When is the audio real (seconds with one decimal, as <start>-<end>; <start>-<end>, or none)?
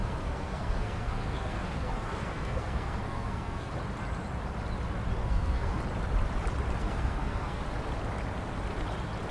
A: 3.7-5.2; 5.8-6.8; 7.6-9.3